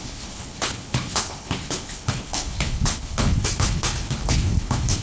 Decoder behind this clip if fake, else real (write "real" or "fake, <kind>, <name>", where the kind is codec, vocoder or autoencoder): fake, codec, HILCodec